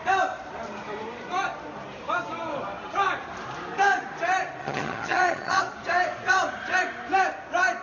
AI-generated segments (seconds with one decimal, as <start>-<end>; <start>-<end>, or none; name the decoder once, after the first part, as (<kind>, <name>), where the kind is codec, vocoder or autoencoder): 4.6-5.6 (vocoder, HiFi-GAN)

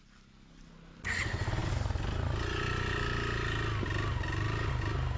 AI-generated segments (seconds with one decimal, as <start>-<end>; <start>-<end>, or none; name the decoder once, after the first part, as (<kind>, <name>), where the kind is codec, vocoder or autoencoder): none